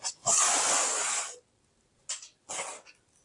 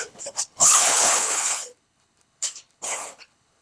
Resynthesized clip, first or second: second